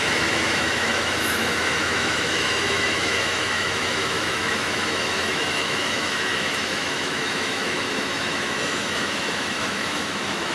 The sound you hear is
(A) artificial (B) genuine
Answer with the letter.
A